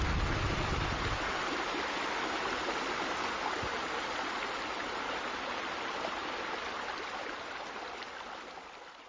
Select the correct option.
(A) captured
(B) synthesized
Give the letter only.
A